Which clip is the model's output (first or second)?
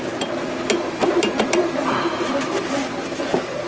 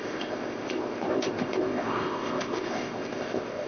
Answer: second